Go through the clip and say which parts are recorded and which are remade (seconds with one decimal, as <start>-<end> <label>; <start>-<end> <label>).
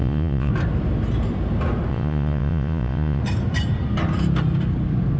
0.0-0.5 remade; 0.5-1.9 recorded; 1.9-3.2 remade; 3.2-5.2 recorded